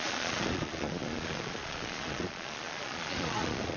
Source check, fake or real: fake